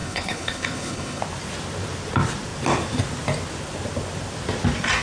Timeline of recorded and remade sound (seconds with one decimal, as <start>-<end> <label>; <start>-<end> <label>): 0.0-1.2 remade; 1.2-5.0 recorded